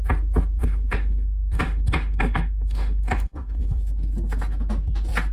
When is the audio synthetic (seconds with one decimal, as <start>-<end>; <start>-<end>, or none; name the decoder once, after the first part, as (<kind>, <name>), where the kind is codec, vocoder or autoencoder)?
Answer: 0.6-3.8 (autoencoder, DAC-VAE)